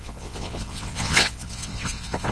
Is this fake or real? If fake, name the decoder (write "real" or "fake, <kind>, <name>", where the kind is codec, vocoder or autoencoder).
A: fake, vocoder, WaveNeXt